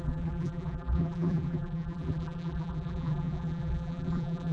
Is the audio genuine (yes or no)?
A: no